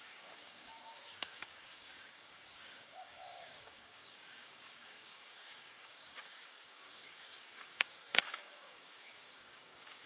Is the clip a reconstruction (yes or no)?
yes